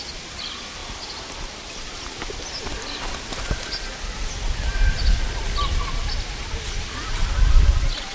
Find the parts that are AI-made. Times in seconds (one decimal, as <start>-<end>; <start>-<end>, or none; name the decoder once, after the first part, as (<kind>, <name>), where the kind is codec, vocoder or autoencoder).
none